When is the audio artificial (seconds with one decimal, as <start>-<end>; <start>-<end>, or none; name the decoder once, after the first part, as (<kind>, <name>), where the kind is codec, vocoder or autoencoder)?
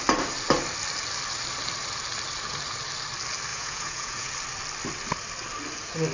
3.5-4.3 (vocoder, Vocos)